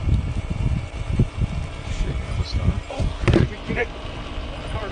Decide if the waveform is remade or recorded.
recorded